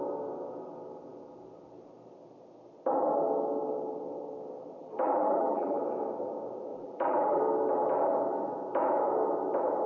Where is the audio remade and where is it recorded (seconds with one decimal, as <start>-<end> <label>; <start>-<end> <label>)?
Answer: 0.0-4.8 recorded; 4.8-5.8 remade; 5.8-6.7 recorded; 6.7-7.4 remade; 7.4-9.9 recorded